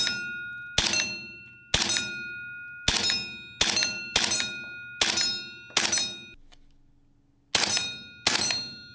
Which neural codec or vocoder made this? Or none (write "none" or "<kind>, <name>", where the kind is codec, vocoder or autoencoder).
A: none